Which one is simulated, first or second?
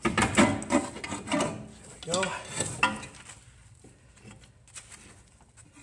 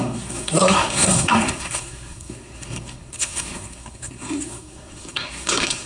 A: second